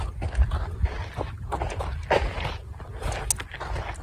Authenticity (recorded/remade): recorded